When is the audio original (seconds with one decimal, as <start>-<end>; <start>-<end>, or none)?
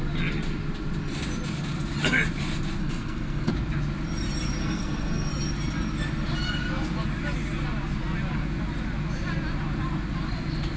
0.0-2.8; 3.5-4.6; 5.3-10.8